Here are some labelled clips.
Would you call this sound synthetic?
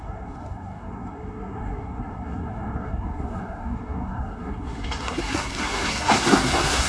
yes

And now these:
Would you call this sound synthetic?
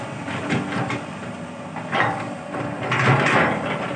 no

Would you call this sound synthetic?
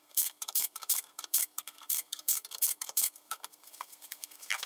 yes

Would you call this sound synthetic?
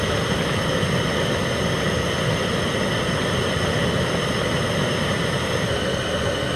no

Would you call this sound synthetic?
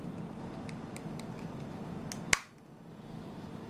no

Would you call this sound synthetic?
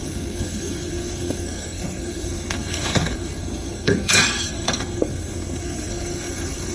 yes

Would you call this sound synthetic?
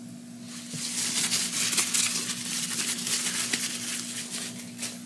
no